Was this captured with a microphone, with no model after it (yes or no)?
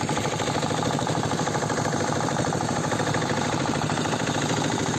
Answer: no